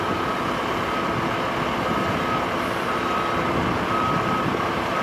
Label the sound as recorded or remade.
recorded